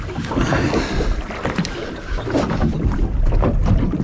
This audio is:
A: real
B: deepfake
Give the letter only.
A